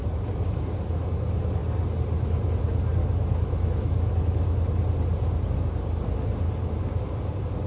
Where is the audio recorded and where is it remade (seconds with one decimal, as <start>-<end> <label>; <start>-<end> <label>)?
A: 0.0-3.0 recorded; 3.0-4.3 remade; 4.3-7.7 recorded